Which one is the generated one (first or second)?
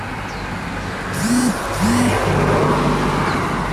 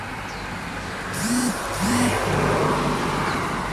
second